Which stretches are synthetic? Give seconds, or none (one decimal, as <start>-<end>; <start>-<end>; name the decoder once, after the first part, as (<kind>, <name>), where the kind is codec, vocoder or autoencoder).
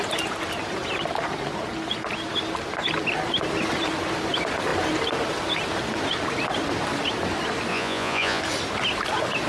7.7-8.4 (vocoder, Vocos)